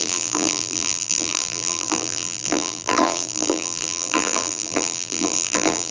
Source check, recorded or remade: remade